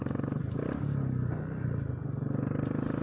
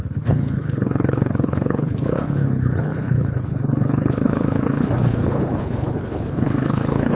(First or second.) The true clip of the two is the first